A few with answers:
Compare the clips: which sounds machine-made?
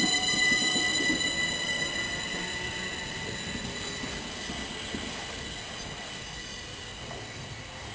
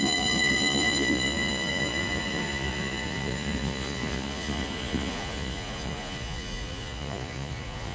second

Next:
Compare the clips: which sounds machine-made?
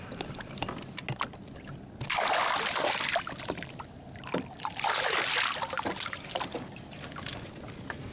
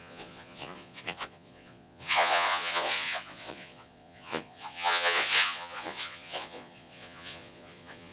second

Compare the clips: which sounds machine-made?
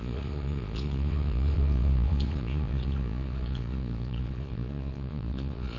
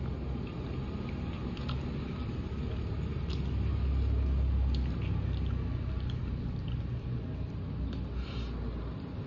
first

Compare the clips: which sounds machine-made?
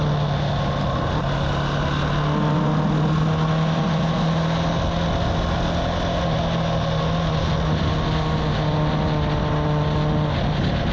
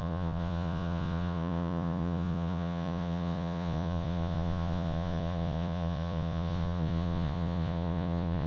second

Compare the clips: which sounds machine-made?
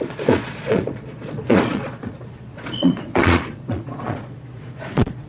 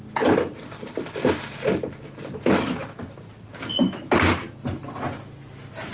first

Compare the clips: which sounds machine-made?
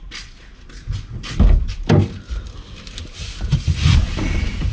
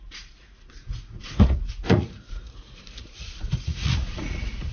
second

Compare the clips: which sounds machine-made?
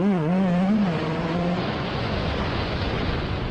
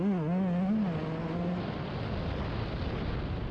first